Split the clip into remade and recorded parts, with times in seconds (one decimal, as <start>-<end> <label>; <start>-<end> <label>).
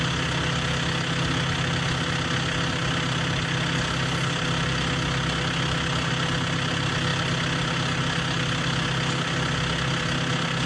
0.0-10.7 recorded